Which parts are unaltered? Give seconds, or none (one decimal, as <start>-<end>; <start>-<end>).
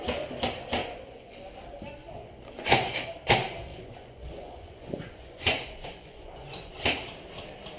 0.0-0.8; 1.4-2.0; 2.9-3.7; 6.7-7.8